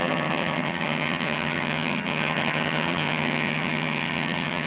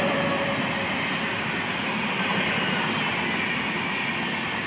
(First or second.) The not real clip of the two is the first